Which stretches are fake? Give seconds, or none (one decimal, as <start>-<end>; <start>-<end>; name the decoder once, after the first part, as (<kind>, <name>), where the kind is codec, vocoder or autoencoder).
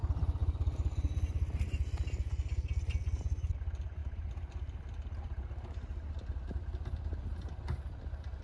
none